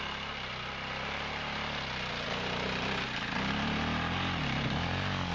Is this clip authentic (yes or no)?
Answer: yes